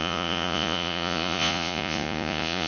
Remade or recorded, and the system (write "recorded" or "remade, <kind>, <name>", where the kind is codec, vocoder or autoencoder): remade, vocoder, Vocos